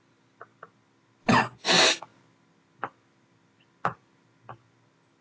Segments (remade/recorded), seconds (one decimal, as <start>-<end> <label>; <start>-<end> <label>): 0.0-5.2 recorded